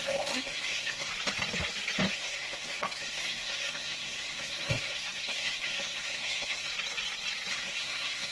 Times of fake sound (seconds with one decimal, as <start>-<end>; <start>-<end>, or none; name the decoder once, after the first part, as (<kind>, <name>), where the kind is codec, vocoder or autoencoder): 0.0-1.1 (codec, SNAC); 2.1-6.7; 7.5-8.3